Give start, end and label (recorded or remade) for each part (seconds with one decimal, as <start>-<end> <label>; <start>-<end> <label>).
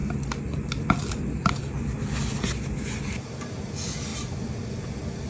0.0-5.3 recorded